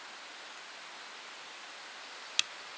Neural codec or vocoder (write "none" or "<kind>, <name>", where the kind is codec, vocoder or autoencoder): none